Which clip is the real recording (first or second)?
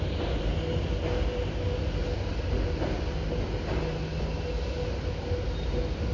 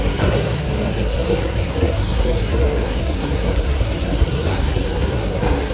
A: first